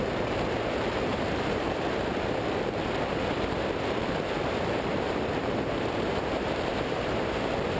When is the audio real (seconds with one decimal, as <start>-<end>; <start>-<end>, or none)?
0.0-1.1; 2.0-4.9